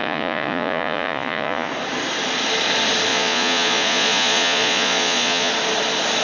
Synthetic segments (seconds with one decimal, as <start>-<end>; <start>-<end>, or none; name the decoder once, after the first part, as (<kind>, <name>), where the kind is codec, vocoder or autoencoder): 0.0-1.7 (vocoder, Vocos); 3.1-5.5